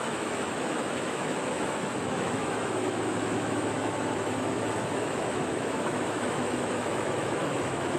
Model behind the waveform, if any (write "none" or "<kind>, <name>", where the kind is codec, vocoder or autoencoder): autoencoder, DAC-VAE